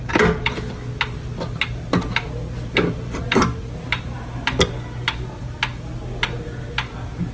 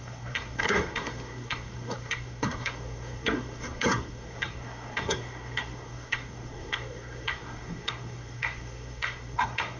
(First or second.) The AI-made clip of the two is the second